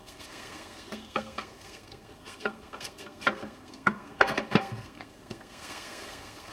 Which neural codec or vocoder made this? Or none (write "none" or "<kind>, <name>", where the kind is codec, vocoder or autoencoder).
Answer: codec, SNAC